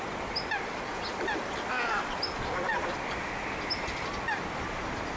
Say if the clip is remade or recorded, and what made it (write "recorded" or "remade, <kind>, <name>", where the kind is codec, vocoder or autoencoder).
recorded